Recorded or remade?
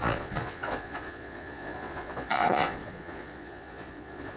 remade